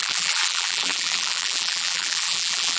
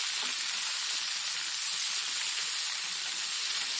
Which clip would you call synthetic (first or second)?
first